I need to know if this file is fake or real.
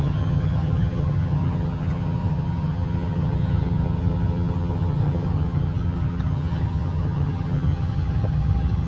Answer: fake